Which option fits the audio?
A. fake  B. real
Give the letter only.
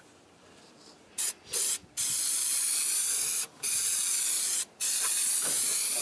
B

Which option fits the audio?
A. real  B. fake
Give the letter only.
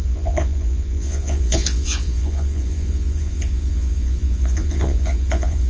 B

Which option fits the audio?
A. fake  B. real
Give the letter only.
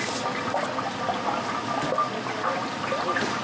B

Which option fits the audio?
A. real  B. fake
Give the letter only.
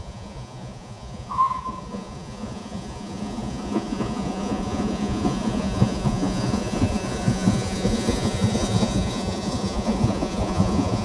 B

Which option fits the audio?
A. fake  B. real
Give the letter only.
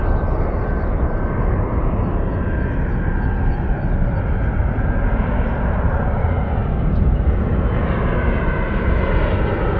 B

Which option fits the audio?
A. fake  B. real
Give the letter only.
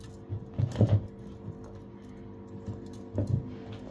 B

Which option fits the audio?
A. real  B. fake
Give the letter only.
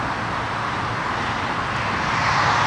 A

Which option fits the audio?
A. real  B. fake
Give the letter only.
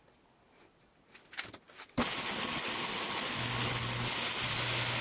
A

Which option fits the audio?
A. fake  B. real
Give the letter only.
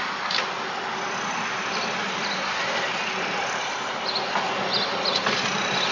B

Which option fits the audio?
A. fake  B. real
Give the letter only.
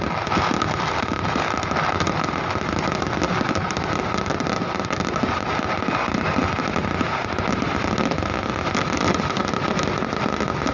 B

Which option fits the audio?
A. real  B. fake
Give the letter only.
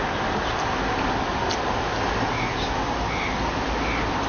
A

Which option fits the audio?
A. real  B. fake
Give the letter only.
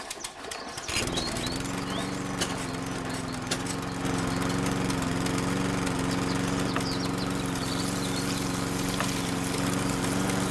A